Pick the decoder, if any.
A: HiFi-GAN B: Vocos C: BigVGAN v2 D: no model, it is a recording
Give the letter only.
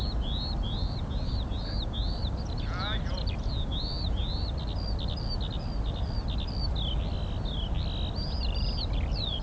D